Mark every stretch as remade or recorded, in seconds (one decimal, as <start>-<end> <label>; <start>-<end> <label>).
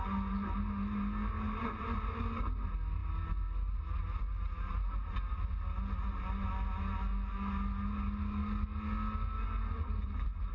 0.0-10.5 recorded